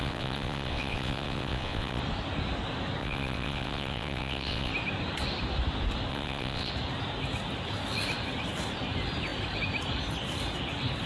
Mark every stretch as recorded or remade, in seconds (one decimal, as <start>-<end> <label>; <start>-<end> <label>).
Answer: 0.0-2.0 remade; 2.0-3.0 recorded; 3.0-4.7 remade; 4.7-6.1 recorded; 6.1-6.7 remade; 6.7-11.1 recorded

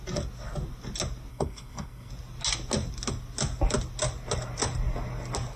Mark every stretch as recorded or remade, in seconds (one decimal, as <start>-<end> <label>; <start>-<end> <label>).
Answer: 0.0-1.3 recorded; 1.3-2.1 remade; 2.1-5.6 recorded

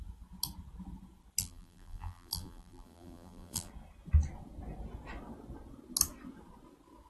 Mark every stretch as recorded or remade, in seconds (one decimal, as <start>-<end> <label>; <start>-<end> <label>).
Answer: 0.0-1.4 recorded; 1.4-3.7 remade; 3.7-7.1 recorded

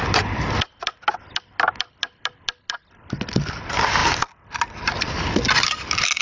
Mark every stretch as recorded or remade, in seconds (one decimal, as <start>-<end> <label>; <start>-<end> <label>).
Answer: 0.0-6.2 recorded

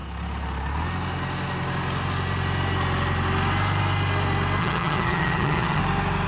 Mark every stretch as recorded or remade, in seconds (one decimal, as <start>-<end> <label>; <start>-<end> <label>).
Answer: 0.0-4.6 recorded; 4.6-5.8 remade; 5.8-6.3 recorded

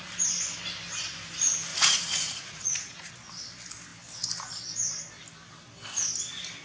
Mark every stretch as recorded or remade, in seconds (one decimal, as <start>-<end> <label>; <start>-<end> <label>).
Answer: 0.0-1.7 recorded; 1.7-3.1 remade; 3.1-6.6 recorded

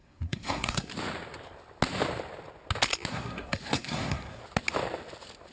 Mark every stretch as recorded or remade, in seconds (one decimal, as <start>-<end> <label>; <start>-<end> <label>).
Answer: 0.0-0.9 remade; 0.9-3.1 recorded; 3.1-4.4 remade; 4.4-5.5 recorded

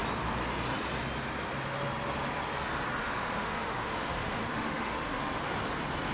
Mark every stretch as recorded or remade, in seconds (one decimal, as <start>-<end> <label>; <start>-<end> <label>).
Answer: 0.0-3.0 recorded; 3.0-5.4 remade; 5.4-6.1 recorded